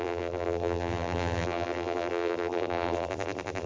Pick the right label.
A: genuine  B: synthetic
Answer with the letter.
B